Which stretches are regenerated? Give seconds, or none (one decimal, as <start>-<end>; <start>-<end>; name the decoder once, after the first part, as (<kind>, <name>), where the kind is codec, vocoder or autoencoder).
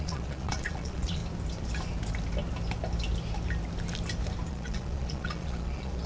0.0-1.2 (vocoder, Vocos); 4.5-6.1